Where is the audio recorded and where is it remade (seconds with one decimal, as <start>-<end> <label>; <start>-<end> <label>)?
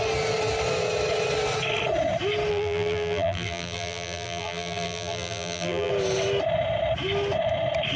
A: 0.0-2.5 recorded; 2.5-5.9 remade; 5.9-8.0 recorded